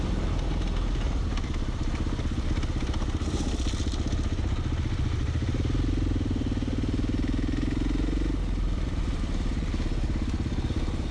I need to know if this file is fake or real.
real